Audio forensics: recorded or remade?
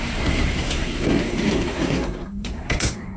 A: remade